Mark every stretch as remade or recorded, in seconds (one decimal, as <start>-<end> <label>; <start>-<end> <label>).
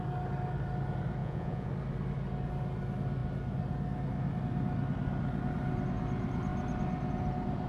0.0-1.2 recorded; 1.2-1.7 remade; 1.7-7.7 recorded